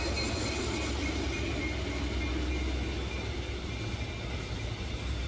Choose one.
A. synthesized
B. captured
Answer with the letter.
B